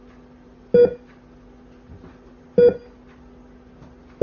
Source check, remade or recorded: recorded